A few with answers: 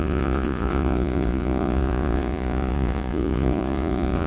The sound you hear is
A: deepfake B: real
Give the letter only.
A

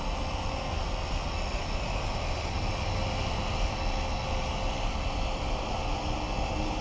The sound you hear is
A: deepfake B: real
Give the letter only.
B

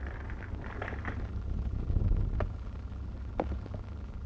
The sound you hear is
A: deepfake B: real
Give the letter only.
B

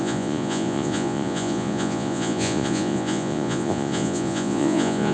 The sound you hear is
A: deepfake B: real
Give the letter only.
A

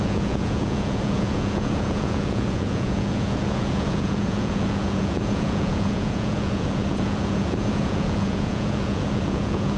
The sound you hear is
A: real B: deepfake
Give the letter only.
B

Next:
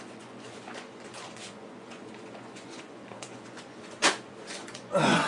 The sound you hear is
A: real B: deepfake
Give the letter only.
B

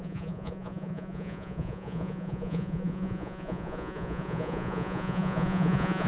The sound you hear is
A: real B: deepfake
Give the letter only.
B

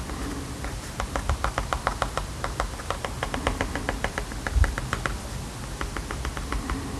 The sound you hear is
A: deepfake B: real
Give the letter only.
B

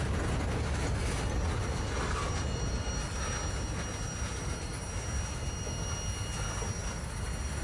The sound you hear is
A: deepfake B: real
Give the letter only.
B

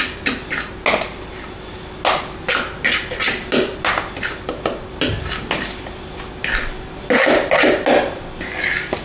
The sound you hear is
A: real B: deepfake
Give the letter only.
A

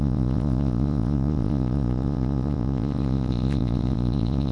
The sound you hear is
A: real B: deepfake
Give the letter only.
B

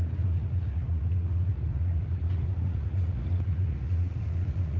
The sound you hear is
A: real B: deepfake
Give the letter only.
B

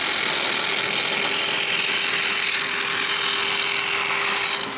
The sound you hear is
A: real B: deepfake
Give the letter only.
A